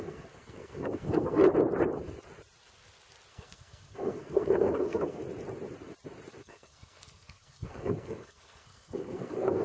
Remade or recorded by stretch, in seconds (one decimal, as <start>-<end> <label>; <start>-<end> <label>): 0.0-1.4 remade; 1.4-3.3 recorded; 3.3-5.2 remade; 5.2-6.4 recorded; 6.4-9.6 remade